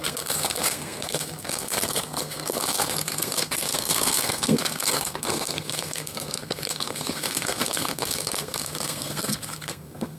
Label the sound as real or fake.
fake